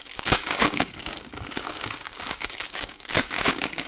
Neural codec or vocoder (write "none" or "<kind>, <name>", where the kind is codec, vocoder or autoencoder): codec, DAC